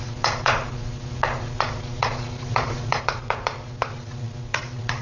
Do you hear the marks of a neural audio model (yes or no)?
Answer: yes